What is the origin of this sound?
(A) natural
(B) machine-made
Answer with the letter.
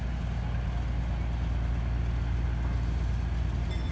A